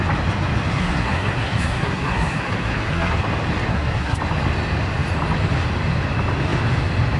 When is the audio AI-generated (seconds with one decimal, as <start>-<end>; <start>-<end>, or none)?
0.7-3.2; 3.7-4.2